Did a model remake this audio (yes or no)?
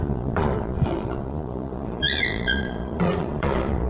yes